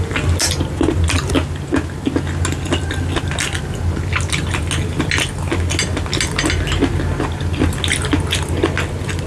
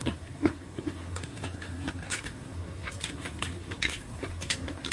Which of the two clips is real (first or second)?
first